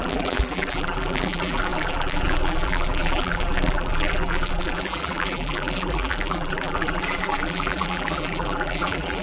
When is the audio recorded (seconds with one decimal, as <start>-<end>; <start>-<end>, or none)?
none